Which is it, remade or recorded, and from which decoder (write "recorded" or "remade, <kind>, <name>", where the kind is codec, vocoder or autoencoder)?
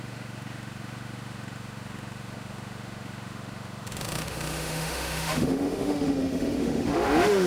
remade, autoencoder, DAC-VAE